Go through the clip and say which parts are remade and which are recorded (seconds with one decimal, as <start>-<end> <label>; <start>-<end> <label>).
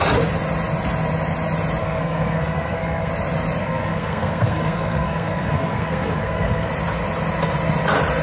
0.0-1.8 recorded; 1.8-3.1 remade; 3.1-3.6 recorded; 3.6-6.7 remade; 6.7-8.2 recorded